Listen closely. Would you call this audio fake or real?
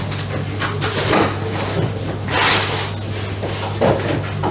real